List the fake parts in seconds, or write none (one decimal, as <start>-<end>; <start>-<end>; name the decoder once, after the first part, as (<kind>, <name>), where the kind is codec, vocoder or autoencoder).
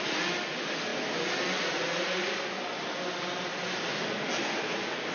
none